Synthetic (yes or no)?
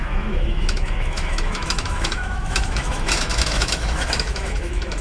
yes